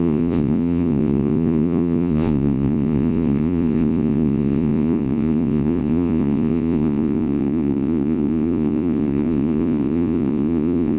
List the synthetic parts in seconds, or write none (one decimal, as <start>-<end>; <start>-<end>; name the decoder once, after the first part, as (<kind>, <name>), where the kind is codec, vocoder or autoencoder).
0.0-11.0 (vocoder, Vocos)